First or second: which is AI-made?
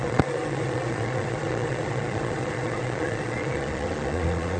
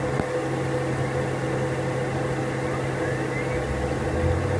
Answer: first